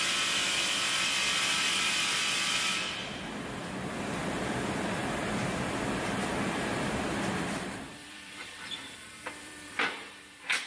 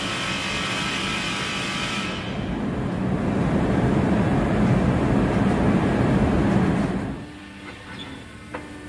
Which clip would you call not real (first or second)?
first